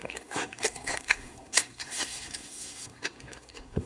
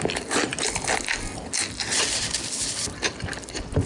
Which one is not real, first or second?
first